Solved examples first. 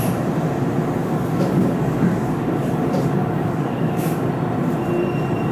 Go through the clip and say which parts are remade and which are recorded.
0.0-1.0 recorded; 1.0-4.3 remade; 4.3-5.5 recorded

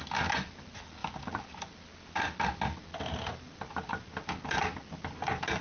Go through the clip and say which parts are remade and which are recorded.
0.0-5.6 recorded

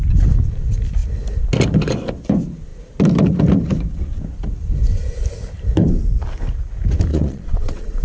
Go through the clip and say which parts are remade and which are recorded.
0.0-7.1 recorded; 7.1-8.0 remade